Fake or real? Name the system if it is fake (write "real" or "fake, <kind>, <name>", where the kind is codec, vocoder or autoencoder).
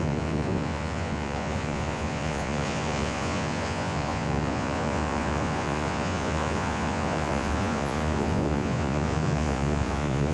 fake, vocoder, Vocos